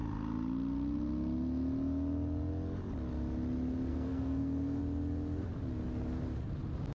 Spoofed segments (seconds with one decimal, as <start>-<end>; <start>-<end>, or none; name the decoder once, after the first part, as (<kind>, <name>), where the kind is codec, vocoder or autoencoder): 3.9-4.8 (codec, SNAC)